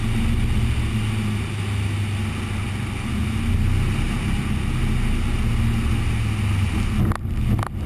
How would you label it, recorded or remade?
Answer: recorded